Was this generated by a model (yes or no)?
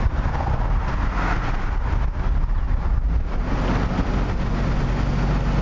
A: no